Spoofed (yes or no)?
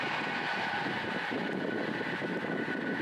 no